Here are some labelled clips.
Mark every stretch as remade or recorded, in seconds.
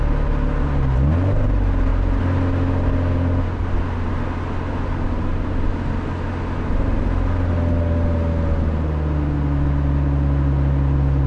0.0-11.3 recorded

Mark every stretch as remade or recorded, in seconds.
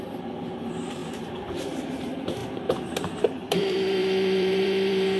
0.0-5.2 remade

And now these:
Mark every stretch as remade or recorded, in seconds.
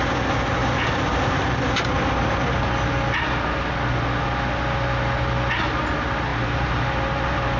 0.0-0.6 recorded; 0.6-1.6 remade; 1.6-6.3 recorded; 6.3-7.6 remade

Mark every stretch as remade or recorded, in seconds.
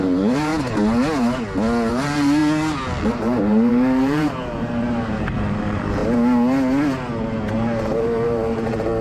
0.0-0.5 remade; 0.5-1.9 recorded; 1.9-2.4 remade; 2.4-3.1 recorded; 3.1-6.0 remade; 6.0-7.5 recorded; 7.5-9.0 remade